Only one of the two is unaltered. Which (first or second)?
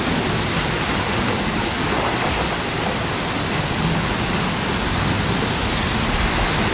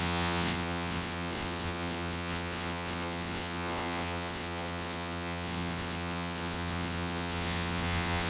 first